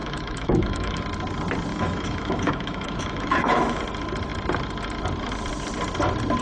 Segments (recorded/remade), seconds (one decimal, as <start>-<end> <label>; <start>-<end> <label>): 0.0-1.0 remade; 1.0-1.7 recorded; 1.7-3.8 remade; 3.8-6.4 recorded